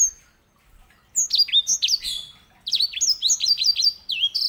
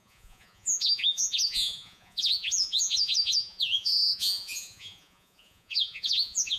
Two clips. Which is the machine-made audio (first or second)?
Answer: second